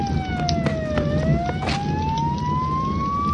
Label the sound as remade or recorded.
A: recorded